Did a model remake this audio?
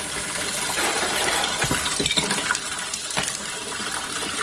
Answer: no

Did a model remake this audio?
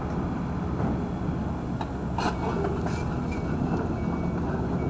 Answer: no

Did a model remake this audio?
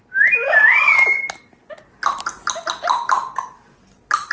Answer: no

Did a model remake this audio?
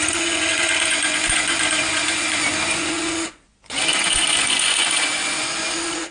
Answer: yes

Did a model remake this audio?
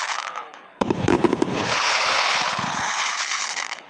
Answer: yes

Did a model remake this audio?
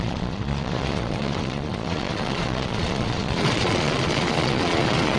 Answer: yes